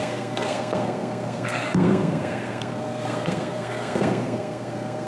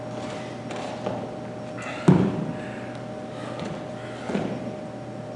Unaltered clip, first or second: second